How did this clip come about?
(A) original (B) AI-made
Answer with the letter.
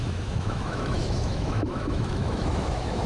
B